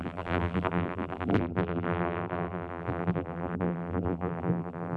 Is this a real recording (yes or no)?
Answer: no